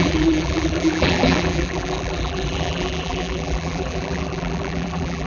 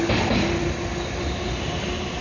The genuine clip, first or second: second